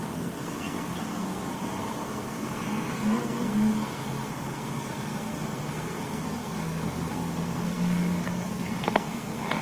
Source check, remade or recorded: remade